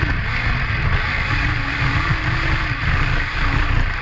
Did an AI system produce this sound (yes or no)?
no